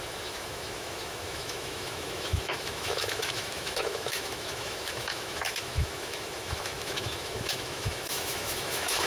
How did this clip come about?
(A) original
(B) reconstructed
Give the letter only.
B